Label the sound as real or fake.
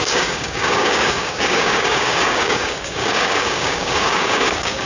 fake